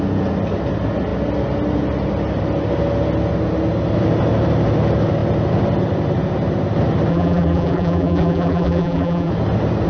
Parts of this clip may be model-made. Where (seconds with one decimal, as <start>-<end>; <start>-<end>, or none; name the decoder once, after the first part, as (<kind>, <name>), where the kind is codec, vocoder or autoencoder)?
7.1-9.3 (vocoder, BigVGAN v2)